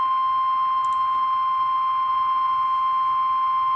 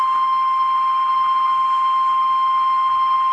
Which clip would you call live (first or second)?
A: first